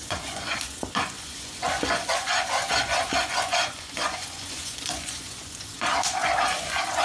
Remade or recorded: remade